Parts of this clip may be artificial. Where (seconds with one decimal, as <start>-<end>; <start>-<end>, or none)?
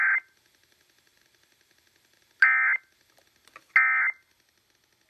none